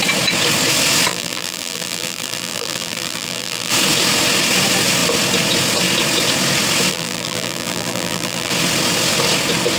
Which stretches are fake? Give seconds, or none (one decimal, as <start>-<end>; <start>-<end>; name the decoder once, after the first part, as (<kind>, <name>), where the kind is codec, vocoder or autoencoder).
1.1-3.7 (vocoder, BigVGAN v2); 6.9-8.5